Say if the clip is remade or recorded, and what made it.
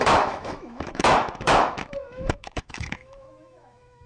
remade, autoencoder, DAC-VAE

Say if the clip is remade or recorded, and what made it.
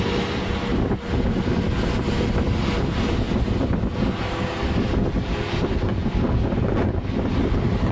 recorded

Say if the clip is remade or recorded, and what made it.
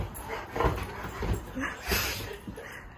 recorded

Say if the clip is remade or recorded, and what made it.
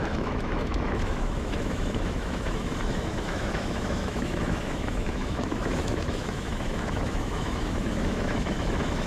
remade, autoencoder, DAC-VAE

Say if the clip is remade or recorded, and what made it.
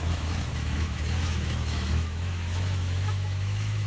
remade, autoencoder, DAC-VAE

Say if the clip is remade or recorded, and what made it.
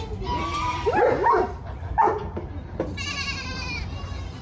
recorded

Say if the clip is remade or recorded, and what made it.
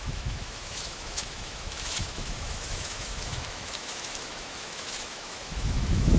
remade, autoencoder, DAC-VAE